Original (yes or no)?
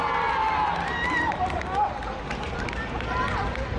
yes